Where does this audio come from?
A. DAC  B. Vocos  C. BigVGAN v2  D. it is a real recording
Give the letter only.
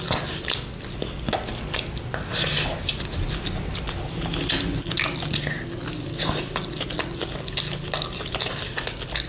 D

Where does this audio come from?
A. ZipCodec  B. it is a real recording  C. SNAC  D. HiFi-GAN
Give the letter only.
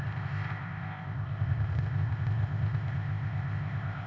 A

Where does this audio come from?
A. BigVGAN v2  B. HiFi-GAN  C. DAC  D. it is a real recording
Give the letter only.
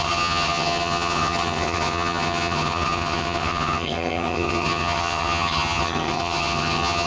B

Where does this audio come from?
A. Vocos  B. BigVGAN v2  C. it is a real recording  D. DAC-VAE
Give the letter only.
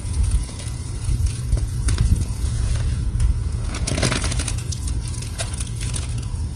A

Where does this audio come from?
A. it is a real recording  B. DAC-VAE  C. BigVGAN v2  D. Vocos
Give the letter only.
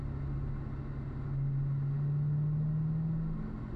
A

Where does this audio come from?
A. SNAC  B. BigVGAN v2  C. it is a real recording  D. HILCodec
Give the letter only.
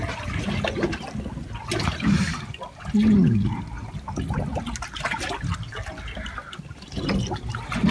C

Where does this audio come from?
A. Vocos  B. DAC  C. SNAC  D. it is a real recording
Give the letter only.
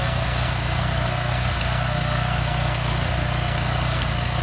C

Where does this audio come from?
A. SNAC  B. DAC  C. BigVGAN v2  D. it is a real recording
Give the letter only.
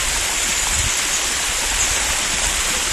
D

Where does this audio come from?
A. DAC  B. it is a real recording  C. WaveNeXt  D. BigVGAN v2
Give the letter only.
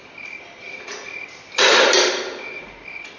B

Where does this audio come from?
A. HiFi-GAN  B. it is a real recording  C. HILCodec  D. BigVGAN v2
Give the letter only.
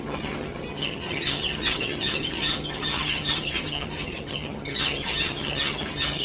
A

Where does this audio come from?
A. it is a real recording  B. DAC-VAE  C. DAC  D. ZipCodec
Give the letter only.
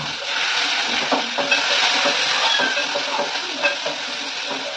A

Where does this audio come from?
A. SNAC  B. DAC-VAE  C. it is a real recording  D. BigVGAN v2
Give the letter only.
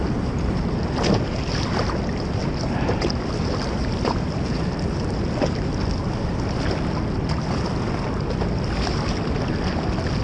C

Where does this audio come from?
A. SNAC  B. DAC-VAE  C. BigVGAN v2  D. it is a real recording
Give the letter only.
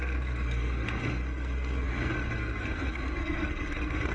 A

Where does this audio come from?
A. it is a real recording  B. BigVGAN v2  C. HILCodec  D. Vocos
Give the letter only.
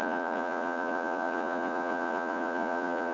D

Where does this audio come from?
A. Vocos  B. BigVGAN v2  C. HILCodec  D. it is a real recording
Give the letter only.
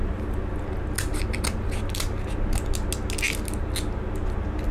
D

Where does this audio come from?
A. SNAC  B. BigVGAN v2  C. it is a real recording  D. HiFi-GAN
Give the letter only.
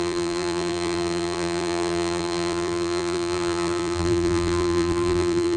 B